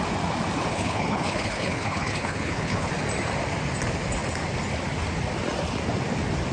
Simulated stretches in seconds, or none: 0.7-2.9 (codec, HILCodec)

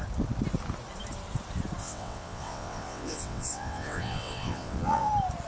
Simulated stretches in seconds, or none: 1.8-5.1 (vocoder, WaveNeXt)

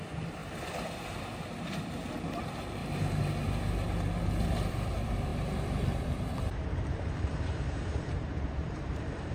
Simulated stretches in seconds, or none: 0.0-0.4 (vocoder, BigVGAN v2); 2.4-2.8; 4.7-9.3

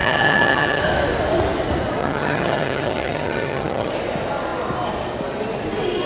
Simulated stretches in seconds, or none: 0.0-0.8 (vocoder, HiFi-GAN); 2.0-3.9

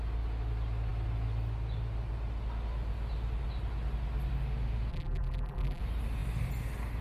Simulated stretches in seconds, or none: 4.9-5.8 (vocoder, BigVGAN v2)

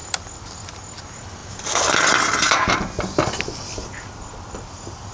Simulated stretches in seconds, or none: none

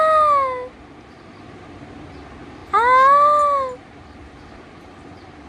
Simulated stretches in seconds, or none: none